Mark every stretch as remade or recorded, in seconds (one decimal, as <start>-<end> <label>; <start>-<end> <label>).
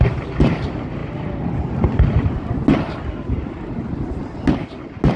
0.0-5.2 recorded